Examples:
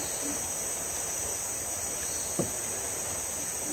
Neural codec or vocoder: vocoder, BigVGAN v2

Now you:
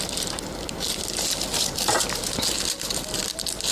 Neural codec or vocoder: none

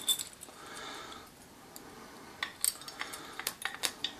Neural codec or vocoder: none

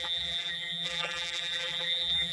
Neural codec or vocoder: vocoder, BigVGAN v2